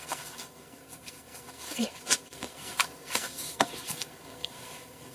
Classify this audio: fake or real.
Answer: fake